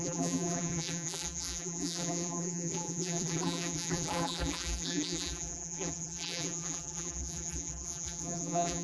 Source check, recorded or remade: remade